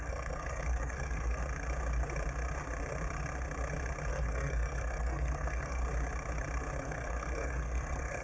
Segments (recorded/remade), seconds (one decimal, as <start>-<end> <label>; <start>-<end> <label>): 0.0-1.4 remade; 1.4-4.1 recorded; 4.1-5.8 remade; 5.8-6.8 recorded; 6.8-8.2 remade